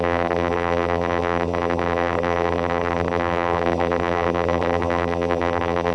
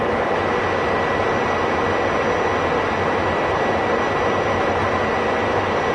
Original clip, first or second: second